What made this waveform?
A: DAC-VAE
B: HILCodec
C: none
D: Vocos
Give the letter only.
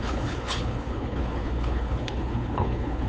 B